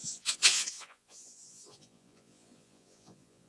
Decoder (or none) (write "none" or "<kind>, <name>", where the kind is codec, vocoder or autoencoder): vocoder, Vocos